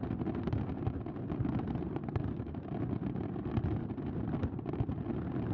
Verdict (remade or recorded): recorded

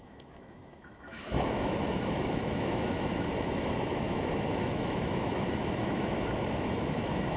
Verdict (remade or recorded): remade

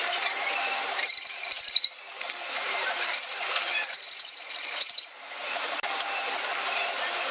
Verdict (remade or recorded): remade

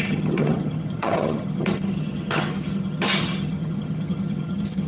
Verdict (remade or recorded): remade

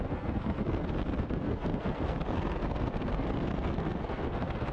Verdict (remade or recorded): remade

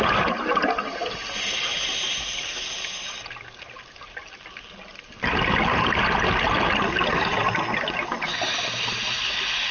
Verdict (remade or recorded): recorded